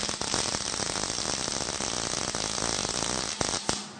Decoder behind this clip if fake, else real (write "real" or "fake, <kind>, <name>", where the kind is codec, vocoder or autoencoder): real